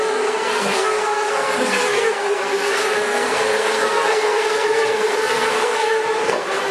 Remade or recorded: remade